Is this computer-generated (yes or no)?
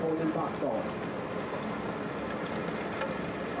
no